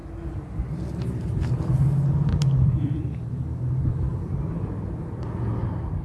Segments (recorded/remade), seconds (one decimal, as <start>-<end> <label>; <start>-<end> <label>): 0.0-2.3 recorded; 2.3-4.3 remade; 4.3-6.0 recorded